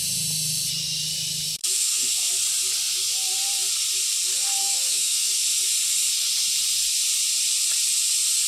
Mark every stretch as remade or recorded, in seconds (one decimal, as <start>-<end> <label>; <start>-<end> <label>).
0.0-1.6 recorded; 1.6-2.3 remade; 2.3-4.6 recorded; 4.6-5.3 remade; 5.3-8.5 recorded